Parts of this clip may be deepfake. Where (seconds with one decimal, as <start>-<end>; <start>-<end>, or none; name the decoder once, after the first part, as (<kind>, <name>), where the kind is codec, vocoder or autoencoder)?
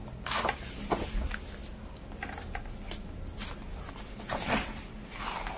1.6-3.9 (vocoder, BigVGAN v2)